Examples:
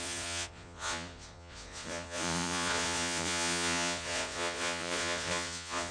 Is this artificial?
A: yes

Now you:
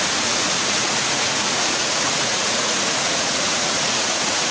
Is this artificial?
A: yes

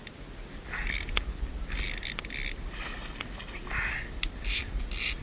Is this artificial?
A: no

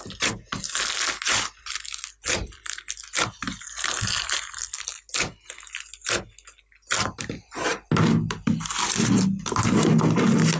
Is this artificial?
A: no